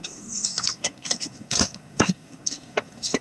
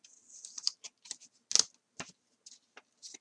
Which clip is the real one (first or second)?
second